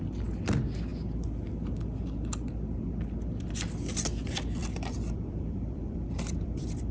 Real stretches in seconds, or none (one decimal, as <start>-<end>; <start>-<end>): 0.0-4.6